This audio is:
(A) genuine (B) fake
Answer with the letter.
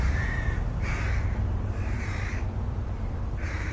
B